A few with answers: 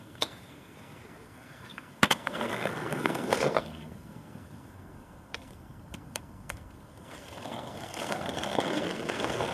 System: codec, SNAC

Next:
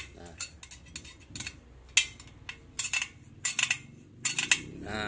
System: none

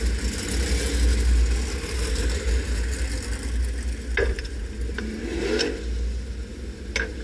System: none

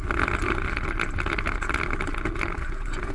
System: none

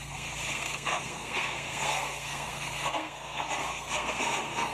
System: codec, SNAC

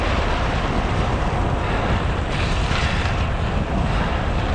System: none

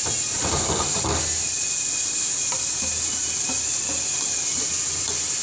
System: none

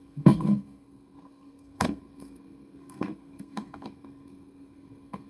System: codec, SNAC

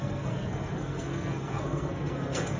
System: codec, SNAC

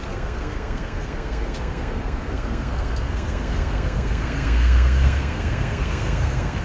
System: codec, SNAC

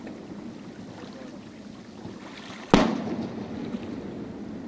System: none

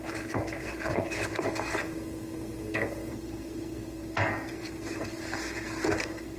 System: codec, SNAC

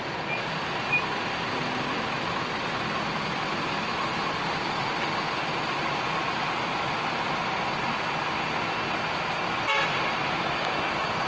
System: none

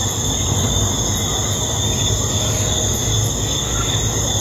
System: none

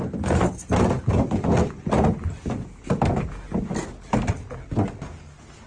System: none